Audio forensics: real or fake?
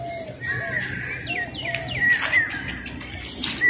real